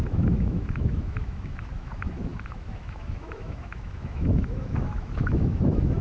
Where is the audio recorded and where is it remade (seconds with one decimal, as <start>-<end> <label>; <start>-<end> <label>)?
0.0-6.0 remade